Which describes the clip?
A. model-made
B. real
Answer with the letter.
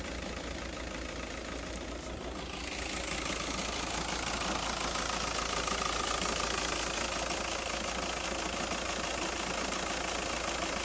B